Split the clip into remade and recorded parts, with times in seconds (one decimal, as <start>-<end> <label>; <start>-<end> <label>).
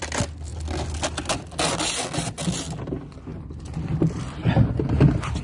0.0-5.4 recorded